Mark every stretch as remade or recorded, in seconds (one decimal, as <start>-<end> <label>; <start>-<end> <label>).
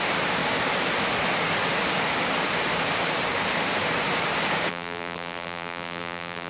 0.0-4.7 recorded; 4.7-6.5 remade